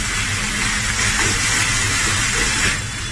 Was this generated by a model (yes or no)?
no